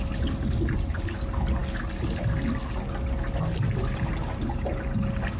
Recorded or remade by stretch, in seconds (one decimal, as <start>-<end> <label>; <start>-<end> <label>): 0.0-5.4 recorded